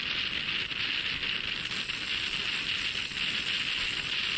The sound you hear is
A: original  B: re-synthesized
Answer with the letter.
A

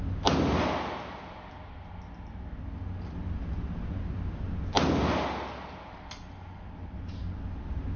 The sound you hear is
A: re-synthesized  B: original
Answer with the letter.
B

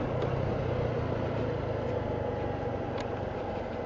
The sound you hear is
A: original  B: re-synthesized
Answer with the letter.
A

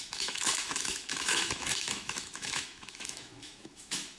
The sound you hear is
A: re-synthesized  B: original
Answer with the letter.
A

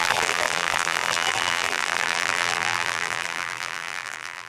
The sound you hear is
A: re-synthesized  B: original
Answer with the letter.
A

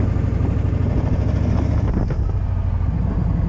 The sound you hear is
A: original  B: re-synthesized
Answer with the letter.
A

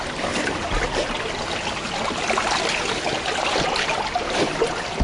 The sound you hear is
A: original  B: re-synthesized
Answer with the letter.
A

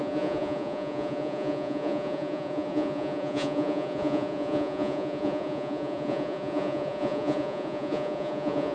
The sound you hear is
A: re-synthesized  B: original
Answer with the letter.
A